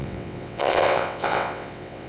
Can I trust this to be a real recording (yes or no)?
no